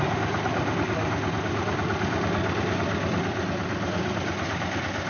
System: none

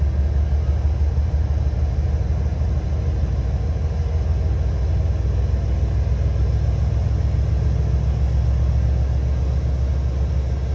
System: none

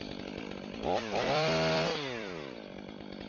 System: vocoder, BigVGAN v2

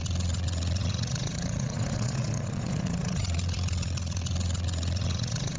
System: vocoder, Vocos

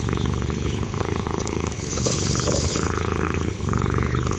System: codec, HILCodec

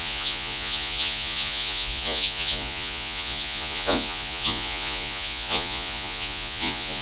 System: vocoder, Vocos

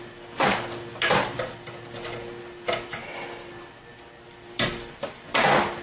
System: none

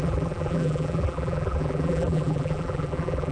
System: vocoder, BigVGAN v2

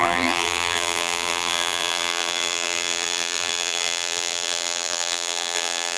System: vocoder, BigVGAN v2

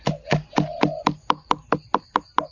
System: none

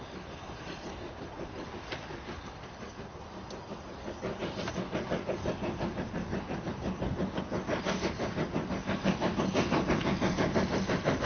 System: none